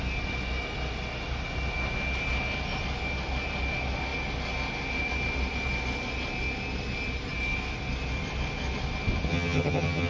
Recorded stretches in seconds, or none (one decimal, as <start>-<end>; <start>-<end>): 0.0-9.3

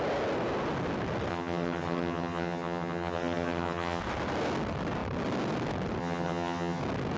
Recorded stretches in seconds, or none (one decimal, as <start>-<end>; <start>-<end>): 0.0-1.3; 4.0-6.0; 6.8-7.2